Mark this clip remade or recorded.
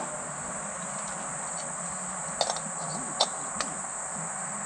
recorded